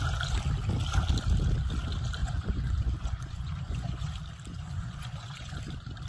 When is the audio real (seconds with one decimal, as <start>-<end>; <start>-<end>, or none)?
0.0-2.2; 4.1-4.5; 5.6-6.1